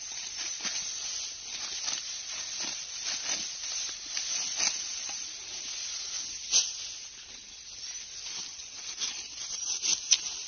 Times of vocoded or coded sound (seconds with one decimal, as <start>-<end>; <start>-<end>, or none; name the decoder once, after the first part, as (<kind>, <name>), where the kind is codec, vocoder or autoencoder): 8.5-9.2 (vocoder, WaveNeXt)